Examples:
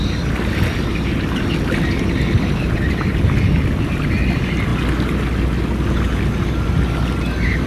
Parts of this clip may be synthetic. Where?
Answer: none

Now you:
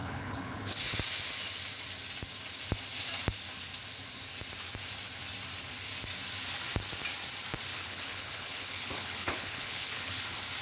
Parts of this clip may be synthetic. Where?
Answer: 0.0-0.8 (codec, HILCodec); 7.7-10.2

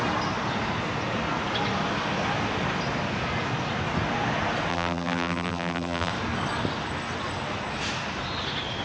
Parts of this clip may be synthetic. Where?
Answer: 4.7-6.1 (vocoder, BigVGAN v2)

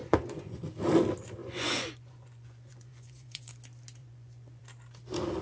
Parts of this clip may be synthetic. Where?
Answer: 0.0-0.6 (vocoder, Vocos); 1.4-3.5; 4.0-4.6

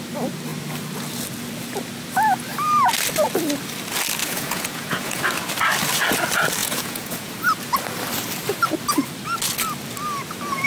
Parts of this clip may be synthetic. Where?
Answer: 4.2-5.2 (vocoder, Vocos); 6.6-7.3